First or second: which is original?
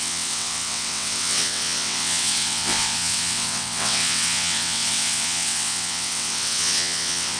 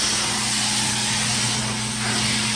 second